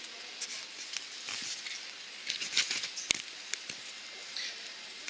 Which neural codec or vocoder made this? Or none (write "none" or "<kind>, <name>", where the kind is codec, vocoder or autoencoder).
none